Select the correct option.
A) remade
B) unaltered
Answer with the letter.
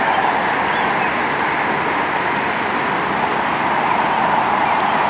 B